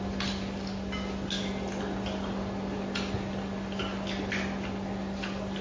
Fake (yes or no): no